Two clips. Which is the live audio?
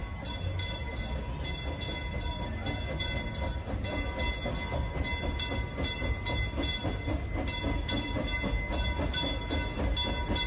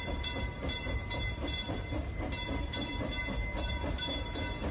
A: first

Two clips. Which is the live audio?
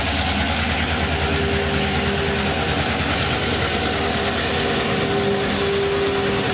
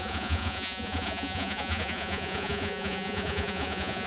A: first